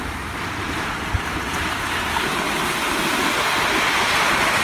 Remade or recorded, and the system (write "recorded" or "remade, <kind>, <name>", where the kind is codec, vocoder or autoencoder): remade, vocoder, BigVGAN v2